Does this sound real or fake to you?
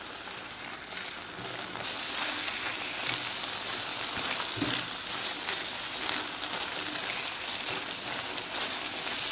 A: real